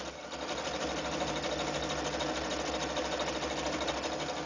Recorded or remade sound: recorded